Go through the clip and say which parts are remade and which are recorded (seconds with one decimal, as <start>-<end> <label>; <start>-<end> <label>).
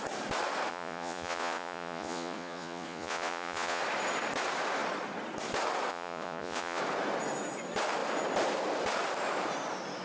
0.0-0.7 recorded; 0.7-3.8 remade; 3.8-5.9 recorded; 5.9-6.8 remade; 6.8-10.0 recorded